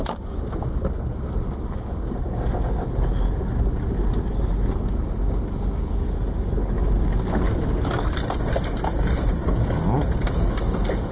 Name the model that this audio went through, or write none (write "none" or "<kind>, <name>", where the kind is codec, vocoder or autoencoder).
none